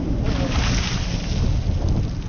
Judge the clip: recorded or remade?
recorded